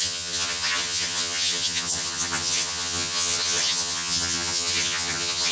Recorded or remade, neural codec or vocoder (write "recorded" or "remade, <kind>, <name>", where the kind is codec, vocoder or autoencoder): remade, vocoder, HiFi-GAN